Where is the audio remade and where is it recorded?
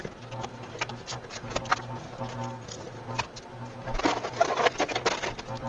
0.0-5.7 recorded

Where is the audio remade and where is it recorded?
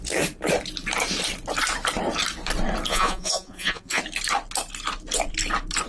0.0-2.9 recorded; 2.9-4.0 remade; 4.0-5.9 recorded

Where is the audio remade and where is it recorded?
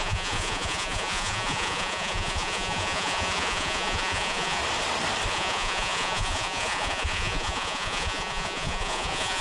0.0-4.6 remade; 4.6-5.3 recorded; 5.3-9.4 remade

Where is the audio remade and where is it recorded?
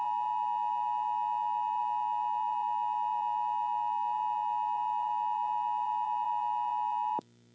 0.0-7.5 remade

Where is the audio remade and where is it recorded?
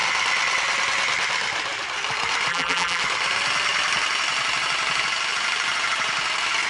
0.0-2.5 recorded; 2.5-3.0 remade; 3.0-6.7 recorded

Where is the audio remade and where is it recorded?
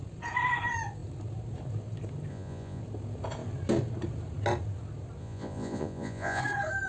0.0-2.3 recorded; 2.3-2.8 remade; 2.8-5.2 recorded; 5.2-6.4 remade; 6.4-6.9 recorded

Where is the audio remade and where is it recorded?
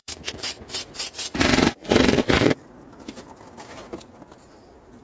0.0-2.8 remade; 2.8-5.0 recorded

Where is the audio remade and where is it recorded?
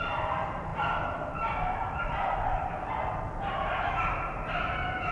0.0-5.1 recorded